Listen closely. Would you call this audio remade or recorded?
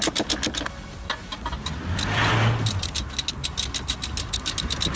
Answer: recorded